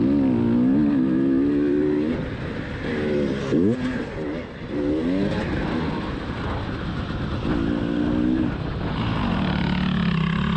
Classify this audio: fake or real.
real